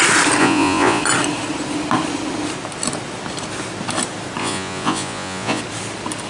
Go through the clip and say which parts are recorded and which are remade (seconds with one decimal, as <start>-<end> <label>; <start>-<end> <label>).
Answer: 0.0-0.4 recorded; 0.4-1.0 remade; 1.0-4.4 recorded; 4.4-5.6 remade; 5.6-6.3 recorded